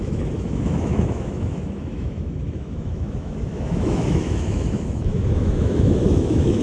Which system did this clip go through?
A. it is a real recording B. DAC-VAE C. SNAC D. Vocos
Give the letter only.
B